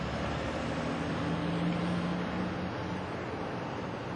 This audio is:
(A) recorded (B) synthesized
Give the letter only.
A